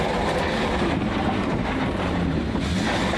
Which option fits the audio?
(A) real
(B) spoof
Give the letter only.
A